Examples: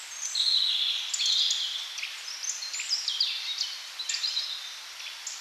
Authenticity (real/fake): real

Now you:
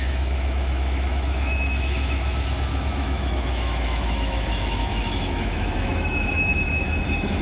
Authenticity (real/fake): fake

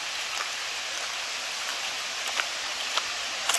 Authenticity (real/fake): real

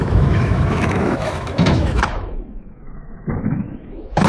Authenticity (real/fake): fake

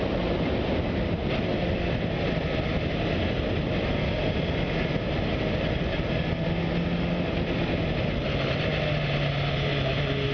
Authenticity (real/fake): real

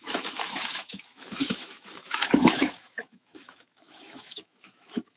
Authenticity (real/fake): fake